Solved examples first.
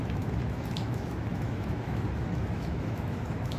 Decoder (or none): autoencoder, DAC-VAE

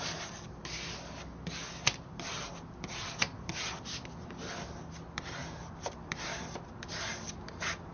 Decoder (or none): vocoder, BigVGAN v2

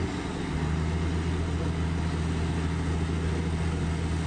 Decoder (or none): none